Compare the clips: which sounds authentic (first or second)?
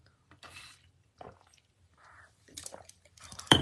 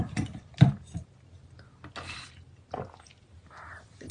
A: second